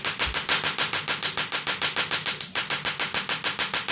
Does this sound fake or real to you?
real